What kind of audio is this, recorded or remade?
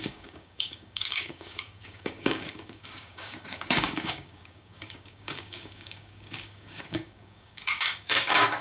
remade